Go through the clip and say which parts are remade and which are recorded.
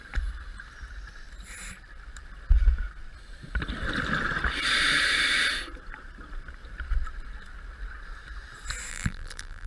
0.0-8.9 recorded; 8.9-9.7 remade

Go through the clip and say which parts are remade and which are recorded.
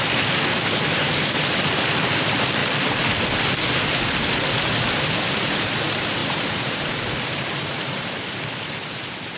0.0-6.2 recorded; 6.2-8.1 remade; 8.1-9.4 recorded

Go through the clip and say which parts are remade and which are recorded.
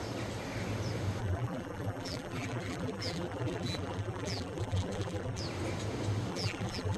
0.0-1.2 recorded; 1.2-5.4 remade; 5.4-6.3 recorded; 6.3-7.0 remade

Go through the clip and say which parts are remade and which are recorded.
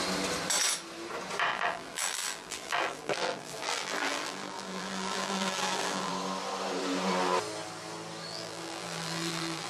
0.0-1.5 recorded; 1.5-6.1 remade; 6.1-8.3 recorded; 8.3-9.7 remade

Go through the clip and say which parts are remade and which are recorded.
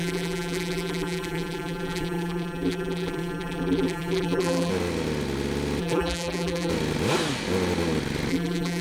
0.0-4.7 remade; 4.7-5.8 recorded; 5.8-6.7 remade; 6.7-8.3 recorded; 8.3-8.8 remade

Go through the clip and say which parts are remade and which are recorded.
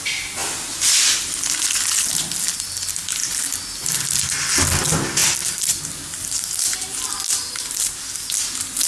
0.0-3.2 recorded; 3.2-3.8 remade; 3.8-5.2 recorded; 5.2-5.8 remade; 5.8-8.9 recorded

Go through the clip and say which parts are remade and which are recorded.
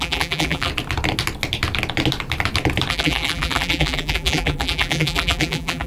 0.0-0.7 remade; 0.7-2.9 recorded; 2.9-5.9 remade